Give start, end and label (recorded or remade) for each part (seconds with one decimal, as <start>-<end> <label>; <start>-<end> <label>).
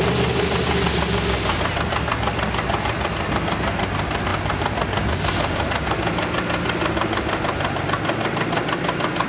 0.0-9.3 recorded